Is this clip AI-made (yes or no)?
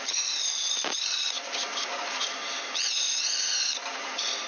no